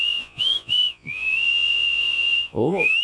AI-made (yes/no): yes